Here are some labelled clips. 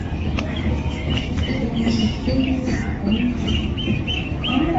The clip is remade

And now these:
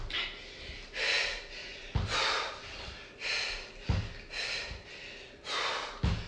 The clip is recorded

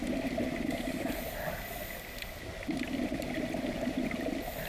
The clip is recorded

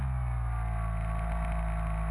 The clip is recorded